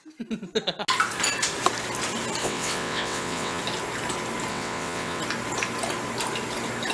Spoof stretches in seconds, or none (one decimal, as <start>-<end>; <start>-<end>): 2.4-3.6; 4.5-5.2